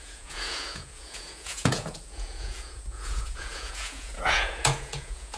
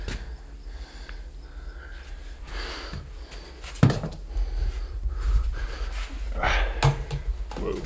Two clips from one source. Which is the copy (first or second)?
first